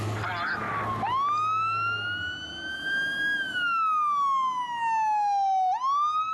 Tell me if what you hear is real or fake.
real